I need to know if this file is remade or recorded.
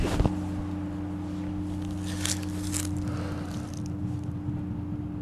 recorded